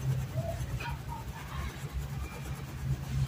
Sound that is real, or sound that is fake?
real